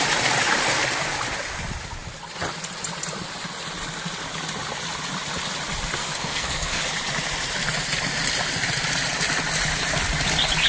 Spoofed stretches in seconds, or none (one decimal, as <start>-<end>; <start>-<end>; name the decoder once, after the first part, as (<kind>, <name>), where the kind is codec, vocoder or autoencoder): 6.0-6.8 (codec, SNAC)